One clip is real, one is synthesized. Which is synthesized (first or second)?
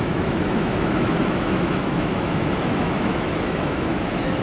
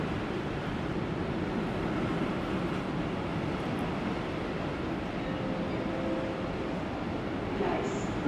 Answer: first